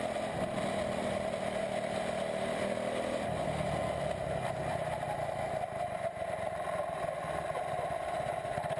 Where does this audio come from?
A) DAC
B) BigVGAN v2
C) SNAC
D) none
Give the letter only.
D